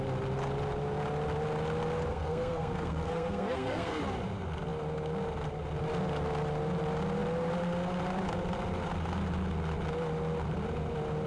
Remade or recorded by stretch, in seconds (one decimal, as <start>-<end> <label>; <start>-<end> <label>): 0.0-2.1 recorded; 2.1-4.0 remade; 4.0-11.3 recorded